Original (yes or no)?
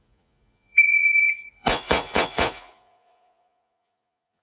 no